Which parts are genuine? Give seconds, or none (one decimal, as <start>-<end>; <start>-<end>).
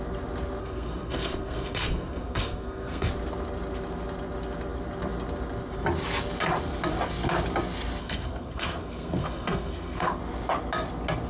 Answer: 0.0-0.6; 3.1-8.0; 10.2-11.3